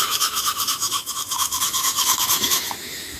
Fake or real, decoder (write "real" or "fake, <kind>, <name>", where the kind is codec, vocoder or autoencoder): fake, autoencoder, DAC-VAE